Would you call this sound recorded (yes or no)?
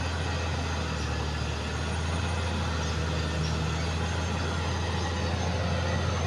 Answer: yes